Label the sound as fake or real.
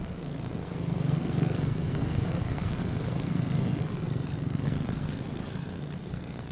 fake